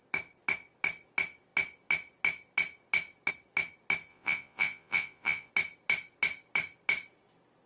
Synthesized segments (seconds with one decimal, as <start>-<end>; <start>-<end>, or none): 4.1-5.5